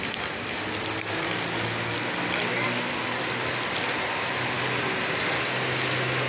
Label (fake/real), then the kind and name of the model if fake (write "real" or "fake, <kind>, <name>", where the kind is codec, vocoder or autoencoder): real